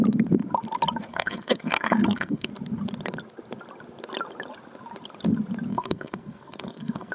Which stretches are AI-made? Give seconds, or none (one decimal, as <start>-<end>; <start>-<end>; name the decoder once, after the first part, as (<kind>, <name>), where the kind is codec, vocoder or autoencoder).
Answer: 1.1-2.5 (codec, SNAC); 5.7-7.1

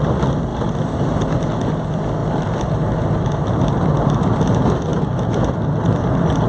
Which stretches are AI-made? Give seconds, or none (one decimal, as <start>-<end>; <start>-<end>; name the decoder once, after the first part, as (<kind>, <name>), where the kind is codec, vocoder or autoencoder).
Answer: 2.2-4.1 (vocoder, BigVGAN v2)

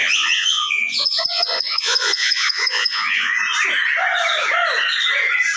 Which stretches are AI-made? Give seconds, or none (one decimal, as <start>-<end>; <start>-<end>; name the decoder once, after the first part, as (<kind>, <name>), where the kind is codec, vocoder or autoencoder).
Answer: 0.0-3.4 (vocoder, Vocos)

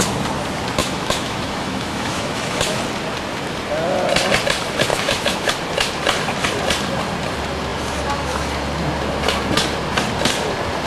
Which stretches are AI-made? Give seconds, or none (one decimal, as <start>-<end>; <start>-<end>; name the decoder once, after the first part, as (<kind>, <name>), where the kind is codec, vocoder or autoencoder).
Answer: 0.8-2.8 (autoencoder, DAC-VAE); 4.9-5.5

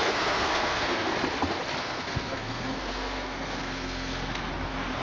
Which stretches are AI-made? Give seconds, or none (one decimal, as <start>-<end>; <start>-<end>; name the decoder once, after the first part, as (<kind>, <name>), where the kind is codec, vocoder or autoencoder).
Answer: 0.0-1.1 (codec, SNAC); 1.8-4.5

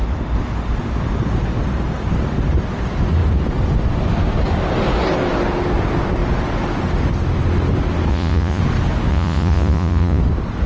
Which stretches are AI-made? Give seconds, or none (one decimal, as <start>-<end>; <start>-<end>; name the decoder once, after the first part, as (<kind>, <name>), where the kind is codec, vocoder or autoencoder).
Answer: 8.1-8.6 (vocoder, Vocos); 9.1-10.2

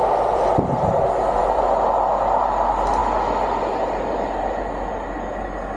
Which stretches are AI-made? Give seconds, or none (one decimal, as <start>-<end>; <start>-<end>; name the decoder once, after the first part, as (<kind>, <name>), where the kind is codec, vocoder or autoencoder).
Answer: 0.0-0.8 (vocoder, BigVGAN v2)